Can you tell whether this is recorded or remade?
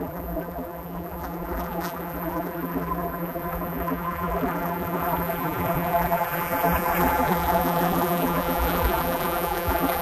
remade